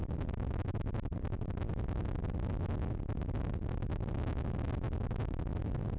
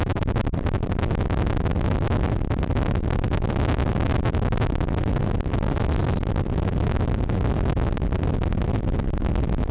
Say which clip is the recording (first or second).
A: first